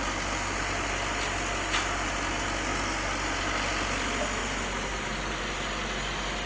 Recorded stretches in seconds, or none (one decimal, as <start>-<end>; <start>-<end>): 0.0-4.4; 5.4-6.5